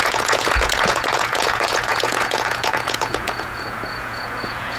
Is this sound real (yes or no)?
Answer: no